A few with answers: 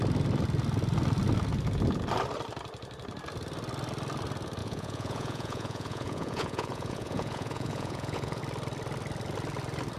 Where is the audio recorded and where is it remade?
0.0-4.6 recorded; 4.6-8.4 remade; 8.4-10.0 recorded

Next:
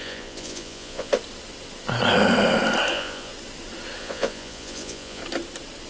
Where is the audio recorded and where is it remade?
0.0-1.1 remade; 1.1-2.9 recorded; 2.9-3.3 remade; 3.3-4.0 recorded; 4.0-5.2 remade; 5.2-5.9 recorded

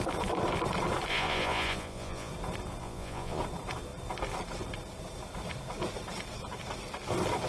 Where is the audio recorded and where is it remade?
0.0-1.1 recorded; 1.1-2.3 remade; 2.3-2.8 recorded; 2.8-3.4 remade; 3.4-7.5 recorded